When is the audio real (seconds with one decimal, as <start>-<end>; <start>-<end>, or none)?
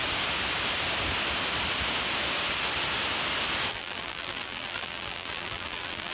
0.0-3.7